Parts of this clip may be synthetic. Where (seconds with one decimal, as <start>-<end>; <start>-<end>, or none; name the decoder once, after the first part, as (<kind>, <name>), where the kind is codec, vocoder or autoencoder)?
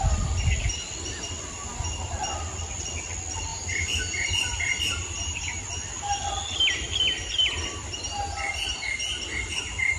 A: 3.5-5.6 (vocoder, BigVGAN v2)